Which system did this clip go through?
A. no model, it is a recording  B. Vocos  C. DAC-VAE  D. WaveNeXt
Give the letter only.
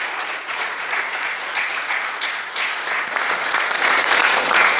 B